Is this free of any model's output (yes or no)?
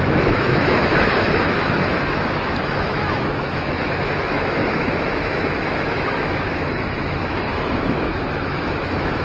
no